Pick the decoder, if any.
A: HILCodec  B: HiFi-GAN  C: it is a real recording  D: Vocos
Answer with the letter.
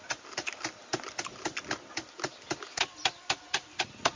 C